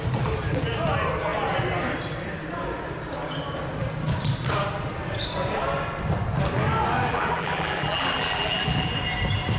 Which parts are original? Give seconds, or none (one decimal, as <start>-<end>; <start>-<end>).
0.0-7.1; 8.9-9.6

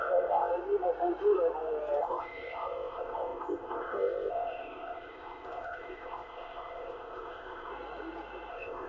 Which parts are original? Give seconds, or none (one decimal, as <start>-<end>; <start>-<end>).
0.5-2.0; 7.7-8.5

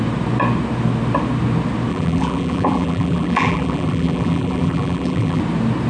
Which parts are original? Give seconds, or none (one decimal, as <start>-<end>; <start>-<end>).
0.0-1.9; 5.4-5.9

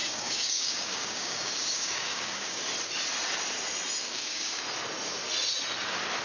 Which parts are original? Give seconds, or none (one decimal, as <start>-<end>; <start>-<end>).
2.6-4.0; 4.6-6.2

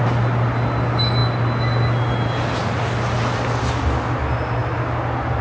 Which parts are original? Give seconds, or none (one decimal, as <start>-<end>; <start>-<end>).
0.0-5.4

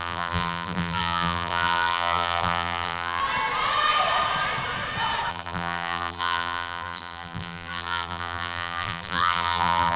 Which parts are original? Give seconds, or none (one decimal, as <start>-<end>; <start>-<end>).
3.2-5.3

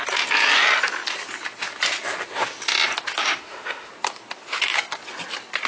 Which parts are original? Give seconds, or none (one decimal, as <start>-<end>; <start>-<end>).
0.0-3.2; 3.9-5.7